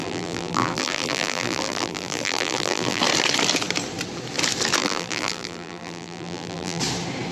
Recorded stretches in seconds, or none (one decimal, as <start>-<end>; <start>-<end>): 3.0-4.8; 6.8-7.3